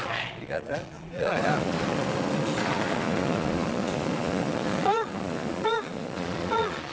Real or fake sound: fake